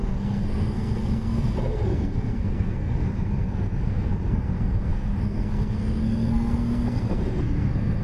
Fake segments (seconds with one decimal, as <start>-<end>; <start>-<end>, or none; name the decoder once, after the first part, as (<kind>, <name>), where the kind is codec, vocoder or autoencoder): 0.0-8.0 (codec, SNAC)